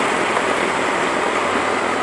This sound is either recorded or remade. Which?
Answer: recorded